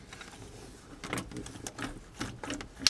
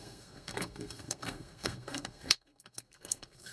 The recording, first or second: first